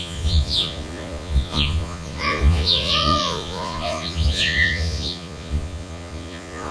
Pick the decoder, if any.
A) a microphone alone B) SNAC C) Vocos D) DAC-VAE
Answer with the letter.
C